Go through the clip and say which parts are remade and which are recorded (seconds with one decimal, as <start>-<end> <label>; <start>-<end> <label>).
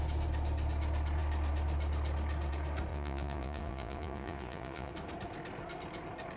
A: 0.0-2.9 recorded; 2.9-4.9 remade; 4.9-6.4 recorded